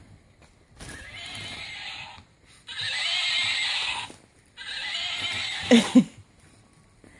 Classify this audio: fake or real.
real